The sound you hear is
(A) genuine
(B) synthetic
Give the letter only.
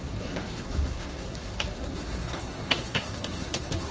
B